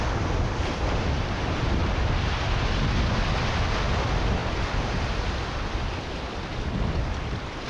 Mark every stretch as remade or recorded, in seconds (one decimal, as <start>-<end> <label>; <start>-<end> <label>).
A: 0.0-7.7 recorded